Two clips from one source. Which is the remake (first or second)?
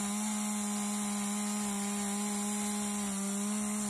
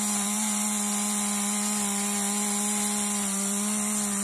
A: second